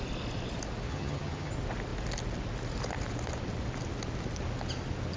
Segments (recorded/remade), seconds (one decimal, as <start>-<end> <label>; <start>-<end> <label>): 0.0-0.9 recorded; 0.9-1.5 remade; 1.5-5.2 recorded